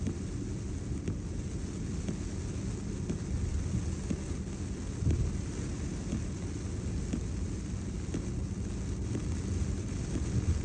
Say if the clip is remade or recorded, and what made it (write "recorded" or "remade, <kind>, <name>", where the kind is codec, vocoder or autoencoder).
recorded